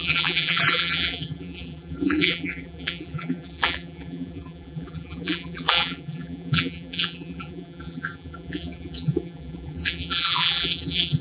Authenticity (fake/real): fake